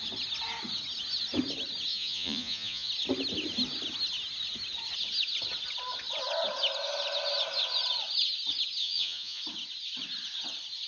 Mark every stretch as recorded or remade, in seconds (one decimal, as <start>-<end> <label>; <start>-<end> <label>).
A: 0.0-1.9 recorded; 1.9-2.9 remade; 2.9-8.8 recorded; 8.8-9.4 remade; 9.4-10.9 recorded